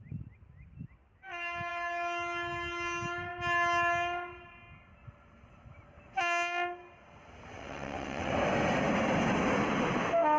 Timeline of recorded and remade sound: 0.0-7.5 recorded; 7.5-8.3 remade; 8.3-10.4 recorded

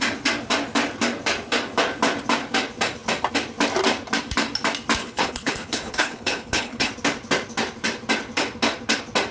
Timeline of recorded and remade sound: 0.0-5.0 recorded; 5.0-6.9 remade; 6.9-9.3 recorded

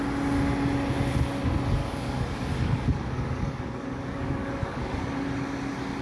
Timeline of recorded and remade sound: 0.0-1.8 recorded; 1.8-5.0 remade; 5.0-6.0 recorded

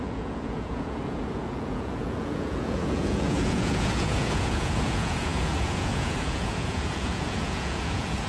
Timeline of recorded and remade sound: 0.0-8.3 remade

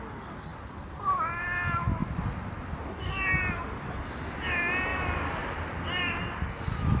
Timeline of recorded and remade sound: 0.0-2.0 recorded; 2.0-3.1 remade; 3.1-4.9 recorded; 4.9-6.2 remade; 6.2-7.0 recorded

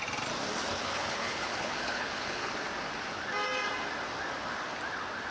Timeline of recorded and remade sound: 0.0-0.7 recorded; 0.7-2.5 remade; 2.5-5.3 recorded

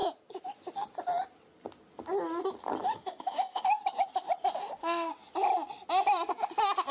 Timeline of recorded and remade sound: 0.0-2.8 recorded; 2.8-3.7 remade; 3.7-4.6 recorded; 4.6-5.1 remade; 5.1-6.9 recorded

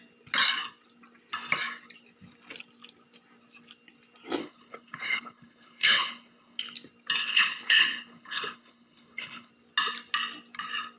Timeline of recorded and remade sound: 0.0-4.4 recorded; 4.4-6.6 remade; 6.6-7.2 recorded; 7.2-9.5 remade; 9.5-11.0 recorded